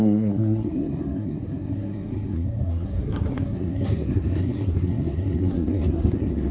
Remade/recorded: remade